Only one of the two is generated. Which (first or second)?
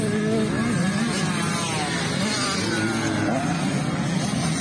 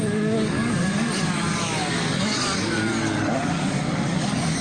second